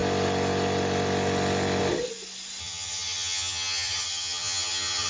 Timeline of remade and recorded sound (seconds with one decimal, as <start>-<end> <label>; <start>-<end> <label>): 0.0-2.6 recorded; 2.6-5.1 remade